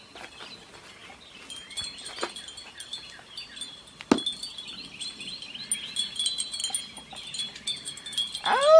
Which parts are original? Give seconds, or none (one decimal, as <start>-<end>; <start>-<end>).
0.0-8.8